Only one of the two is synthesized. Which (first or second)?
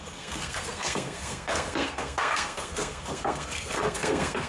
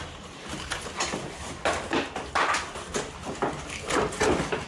first